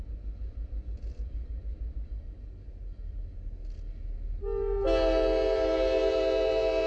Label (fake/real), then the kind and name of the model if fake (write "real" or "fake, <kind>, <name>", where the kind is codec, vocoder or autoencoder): real